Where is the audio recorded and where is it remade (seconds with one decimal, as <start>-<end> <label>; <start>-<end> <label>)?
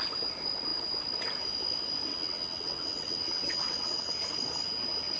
0.0-2.1 recorded; 2.1-4.1 remade; 4.1-5.2 recorded